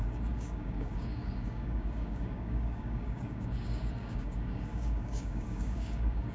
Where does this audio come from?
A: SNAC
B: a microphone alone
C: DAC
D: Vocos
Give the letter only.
C